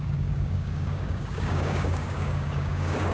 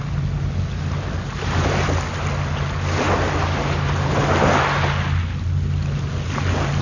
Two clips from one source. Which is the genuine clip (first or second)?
second